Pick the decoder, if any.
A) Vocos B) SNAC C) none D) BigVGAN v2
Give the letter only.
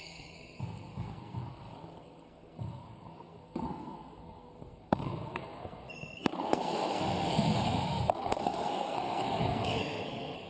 B